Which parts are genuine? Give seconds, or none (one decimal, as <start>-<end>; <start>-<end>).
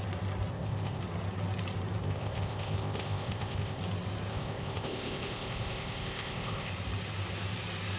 0.0-0.5; 1.0-2.0; 3.8-4.3; 6.7-8.0